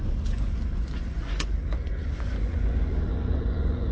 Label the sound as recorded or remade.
remade